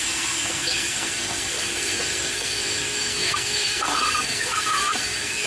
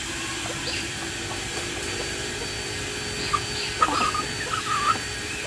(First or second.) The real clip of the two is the second